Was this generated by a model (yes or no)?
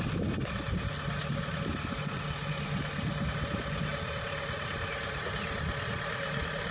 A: no